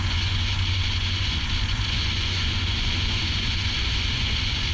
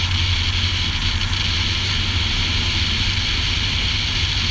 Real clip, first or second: second